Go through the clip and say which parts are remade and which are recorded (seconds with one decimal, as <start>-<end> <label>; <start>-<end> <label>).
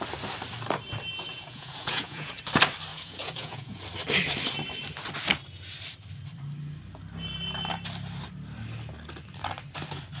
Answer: 0.0-1.3 recorded; 1.3-2.4 remade; 2.4-2.9 recorded; 2.9-3.8 remade; 3.8-10.2 recorded